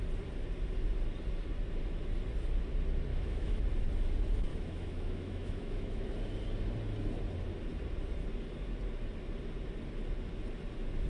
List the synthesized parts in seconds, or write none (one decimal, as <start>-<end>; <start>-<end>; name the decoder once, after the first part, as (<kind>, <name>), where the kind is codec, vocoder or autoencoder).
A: 3.1-3.6 (autoencoder, DAC-VAE); 4.5-6.1